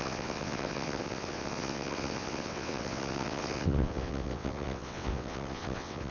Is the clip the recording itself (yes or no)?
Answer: no